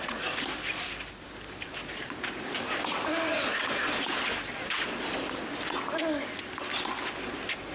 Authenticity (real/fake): real